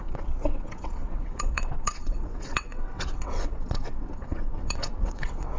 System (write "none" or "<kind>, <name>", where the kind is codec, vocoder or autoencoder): vocoder, WaveNeXt